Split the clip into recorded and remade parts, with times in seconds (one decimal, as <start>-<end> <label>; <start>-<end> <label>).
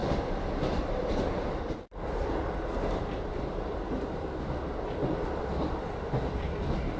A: 0.0-7.0 recorded